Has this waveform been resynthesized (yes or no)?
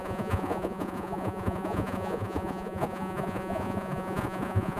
yes